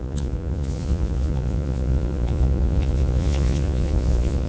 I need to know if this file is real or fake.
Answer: fake